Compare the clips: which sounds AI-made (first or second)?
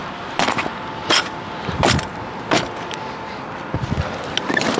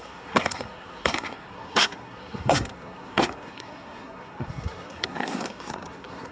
second